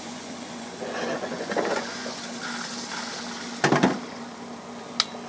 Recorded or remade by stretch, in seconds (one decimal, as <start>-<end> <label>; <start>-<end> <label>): 0.0-2.2 remade; 2.2-5.3 recorded